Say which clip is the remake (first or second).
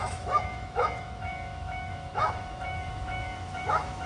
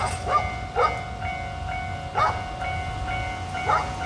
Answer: first